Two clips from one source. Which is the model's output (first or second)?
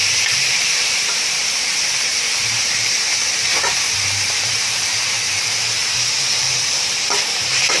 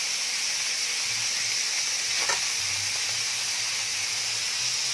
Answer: first